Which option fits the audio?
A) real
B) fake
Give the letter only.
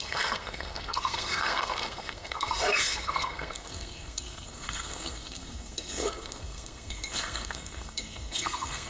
B